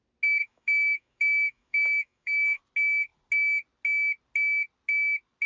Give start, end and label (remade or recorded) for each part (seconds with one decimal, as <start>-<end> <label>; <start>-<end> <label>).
0.0-0.4 recorded; 0.4-2.6 remade; 2.6-5.5 recorded